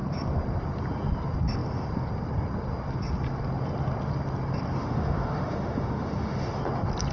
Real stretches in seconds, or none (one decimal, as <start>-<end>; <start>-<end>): 0.0-4.8; 6.6-7.1